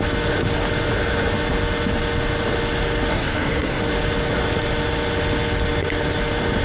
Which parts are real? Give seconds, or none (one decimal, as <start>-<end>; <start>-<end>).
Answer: 0.0-3.1; 3.8-6.6